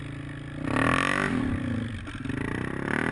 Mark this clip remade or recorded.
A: recorded